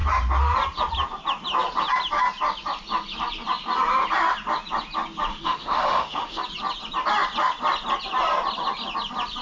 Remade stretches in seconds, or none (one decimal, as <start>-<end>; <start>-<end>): 5.3-6.4